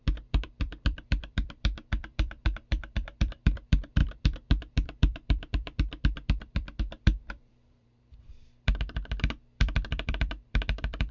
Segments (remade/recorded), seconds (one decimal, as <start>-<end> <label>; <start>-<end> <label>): 0.0-11.1 remade